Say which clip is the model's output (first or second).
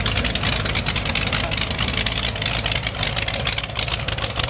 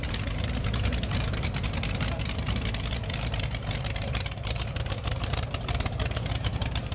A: second